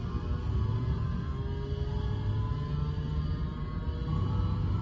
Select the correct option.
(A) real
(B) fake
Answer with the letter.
A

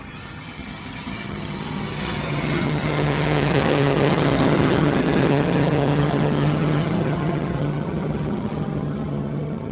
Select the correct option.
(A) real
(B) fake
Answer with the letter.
B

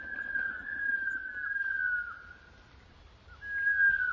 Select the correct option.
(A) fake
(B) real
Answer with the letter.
B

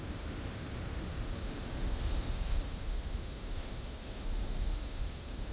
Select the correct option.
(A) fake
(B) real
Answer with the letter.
A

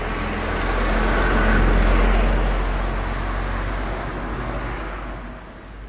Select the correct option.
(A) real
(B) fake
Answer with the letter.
A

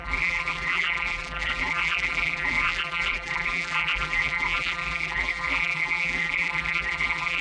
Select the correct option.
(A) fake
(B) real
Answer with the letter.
A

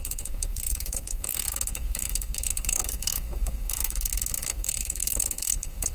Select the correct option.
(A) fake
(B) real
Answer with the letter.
A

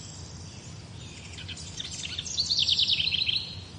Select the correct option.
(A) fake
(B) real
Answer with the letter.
B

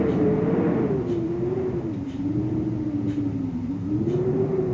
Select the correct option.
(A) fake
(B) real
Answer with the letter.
B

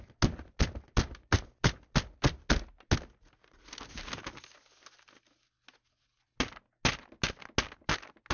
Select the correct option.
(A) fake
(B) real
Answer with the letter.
B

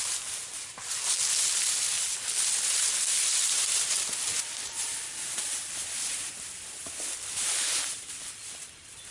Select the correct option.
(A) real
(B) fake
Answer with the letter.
A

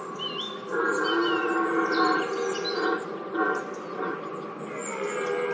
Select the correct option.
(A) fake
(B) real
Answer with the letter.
B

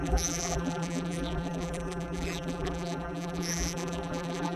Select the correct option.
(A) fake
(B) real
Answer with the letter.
A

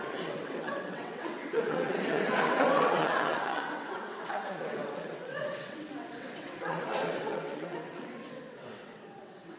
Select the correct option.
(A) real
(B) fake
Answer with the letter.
B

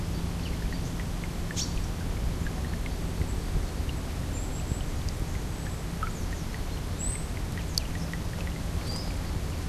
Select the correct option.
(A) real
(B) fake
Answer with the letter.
A